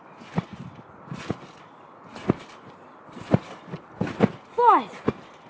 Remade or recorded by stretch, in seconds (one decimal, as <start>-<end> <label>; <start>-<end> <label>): 0.0-5.5 recorded